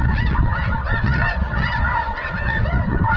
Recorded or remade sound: remade